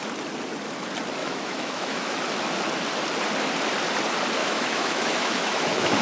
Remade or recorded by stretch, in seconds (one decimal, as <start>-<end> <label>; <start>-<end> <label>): 0.0-1.2 recorded; 1.2-2.2 remade; 2.2-4.4 recorded; 4.4-6.0 remade